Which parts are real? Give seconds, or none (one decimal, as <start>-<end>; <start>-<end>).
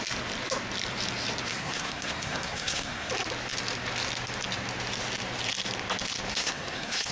0.0-1.5; 3.1-6.3